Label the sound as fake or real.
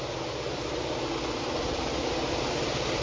real